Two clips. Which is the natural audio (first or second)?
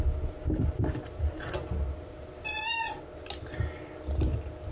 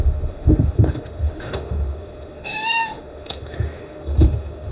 first